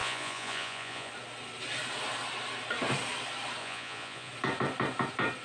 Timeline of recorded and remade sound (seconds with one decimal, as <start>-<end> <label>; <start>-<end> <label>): 0.0-1.1 remade; 1.1-3.6 recorded; 3.6-4.3 remade; 4.3-5.4 recorded